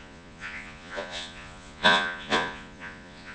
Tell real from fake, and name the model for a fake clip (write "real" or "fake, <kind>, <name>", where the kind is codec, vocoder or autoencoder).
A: fake, vocoder, Vocos